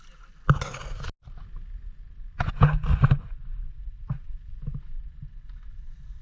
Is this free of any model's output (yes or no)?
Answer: yes